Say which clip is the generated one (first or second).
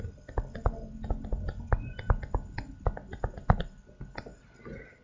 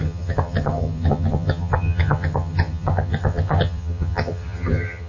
second